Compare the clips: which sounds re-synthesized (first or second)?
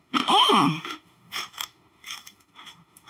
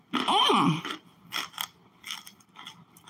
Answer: first